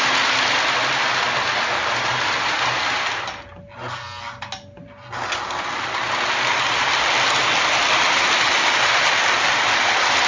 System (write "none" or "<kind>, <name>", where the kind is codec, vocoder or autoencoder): none